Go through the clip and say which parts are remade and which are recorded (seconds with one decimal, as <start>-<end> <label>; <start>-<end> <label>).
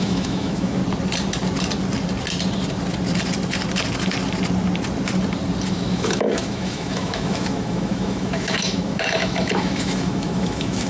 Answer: 0.0-0.8 remade; 0.8-5.7 recorded; 5.7-10.9 remade